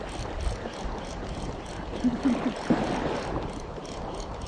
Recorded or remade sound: recorded